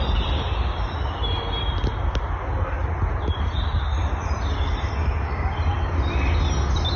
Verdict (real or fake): real